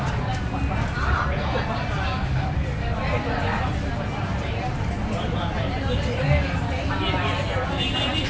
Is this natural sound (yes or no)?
yes